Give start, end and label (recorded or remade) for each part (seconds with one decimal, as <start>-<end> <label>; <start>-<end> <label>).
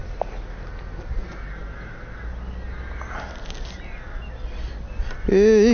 0.0-5.7 recorded